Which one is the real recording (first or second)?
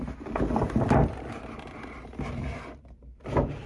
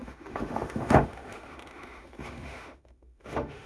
first